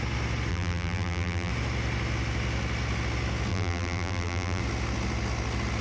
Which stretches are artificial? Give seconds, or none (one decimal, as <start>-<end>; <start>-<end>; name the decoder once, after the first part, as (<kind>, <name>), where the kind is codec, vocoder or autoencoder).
0.5-1.5 (vocoder, BigVGAN v2); 3.5-4.6